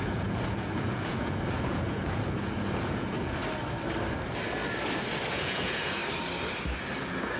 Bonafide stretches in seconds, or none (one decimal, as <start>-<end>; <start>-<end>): 3.4-5.3; 6.0-7.4